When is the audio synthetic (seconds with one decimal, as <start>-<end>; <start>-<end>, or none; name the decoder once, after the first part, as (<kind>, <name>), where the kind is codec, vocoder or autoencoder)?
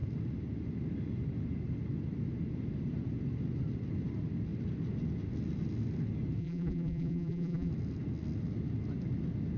6.4-7.7 (vocoder, BigVGAN v2)